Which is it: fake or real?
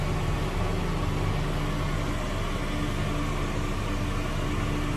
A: real